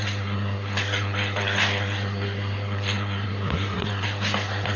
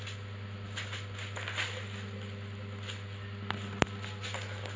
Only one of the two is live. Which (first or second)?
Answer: second